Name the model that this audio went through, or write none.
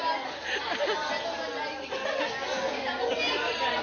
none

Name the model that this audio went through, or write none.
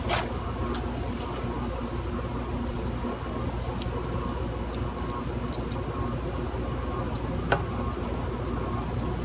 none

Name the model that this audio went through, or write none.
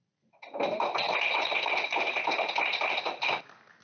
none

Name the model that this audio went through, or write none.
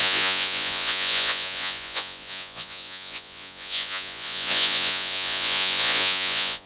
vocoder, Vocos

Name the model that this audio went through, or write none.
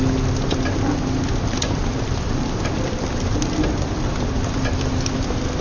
none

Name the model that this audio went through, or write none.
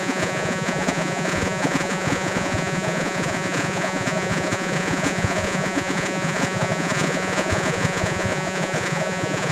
vocoder, Vocos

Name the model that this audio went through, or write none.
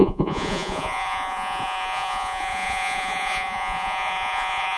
vocoder, Vocos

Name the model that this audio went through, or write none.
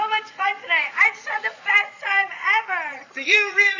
vocoder, Vocos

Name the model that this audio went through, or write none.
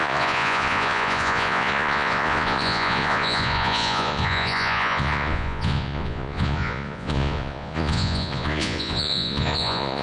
vocoder, Vocos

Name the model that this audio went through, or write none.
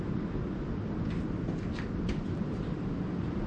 none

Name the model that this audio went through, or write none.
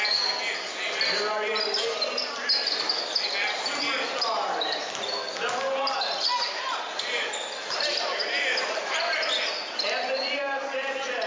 none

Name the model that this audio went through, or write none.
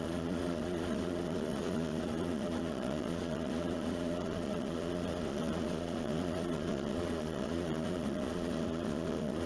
vocoder, Vocos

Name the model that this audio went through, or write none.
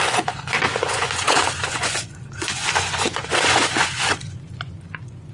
vocoder, Vocos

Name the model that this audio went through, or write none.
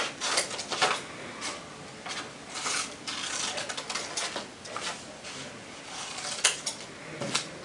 none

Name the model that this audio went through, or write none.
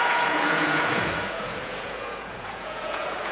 vocoder, Vocos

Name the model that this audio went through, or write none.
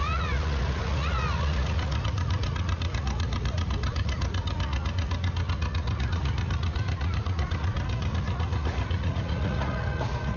vocoder, Vocos